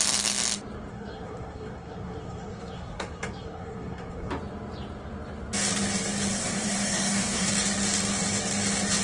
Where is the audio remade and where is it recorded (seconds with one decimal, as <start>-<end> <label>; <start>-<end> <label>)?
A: 0.0-0.9 recorded; 0.9-4.3 remade; 4.3-6.3 recorded; 6.3-7.5 remade; 7.5-9.0 recorded